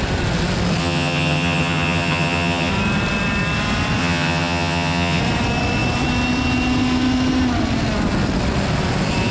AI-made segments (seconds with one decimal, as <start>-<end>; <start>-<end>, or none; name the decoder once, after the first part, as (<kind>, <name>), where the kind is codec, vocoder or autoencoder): 0.8-2.7 (vocoder, HiFi-GAN); 4.0-5.2